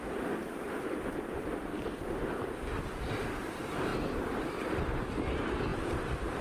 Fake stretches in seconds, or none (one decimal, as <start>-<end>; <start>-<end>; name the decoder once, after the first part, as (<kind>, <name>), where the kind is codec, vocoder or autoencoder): none